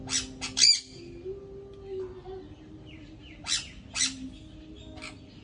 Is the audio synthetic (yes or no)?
no